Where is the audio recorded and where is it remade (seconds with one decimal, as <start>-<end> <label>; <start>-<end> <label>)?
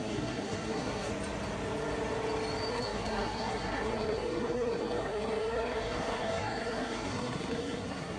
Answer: 0.0-1.1 remade; 1.1-2.7 recorded; 2.7-8.2 remade